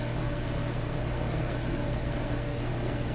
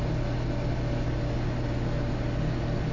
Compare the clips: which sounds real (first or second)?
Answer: second